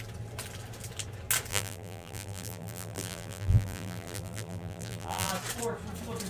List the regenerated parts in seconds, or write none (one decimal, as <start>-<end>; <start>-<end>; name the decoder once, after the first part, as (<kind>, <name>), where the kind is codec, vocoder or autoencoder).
1.5-5.3 (vocoder, BigVGAN v2)